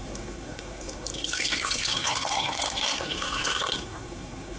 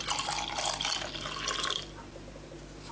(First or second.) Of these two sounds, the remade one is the first